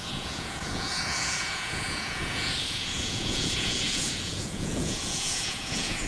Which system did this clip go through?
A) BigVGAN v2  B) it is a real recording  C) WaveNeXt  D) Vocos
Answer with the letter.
D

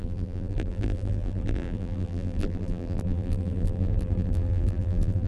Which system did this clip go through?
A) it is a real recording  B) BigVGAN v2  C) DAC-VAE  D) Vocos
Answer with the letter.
B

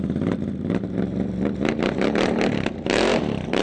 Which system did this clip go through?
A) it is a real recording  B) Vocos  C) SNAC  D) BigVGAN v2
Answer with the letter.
D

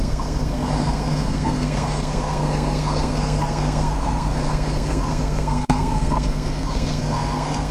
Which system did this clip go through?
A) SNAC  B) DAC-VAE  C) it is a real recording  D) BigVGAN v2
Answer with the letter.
A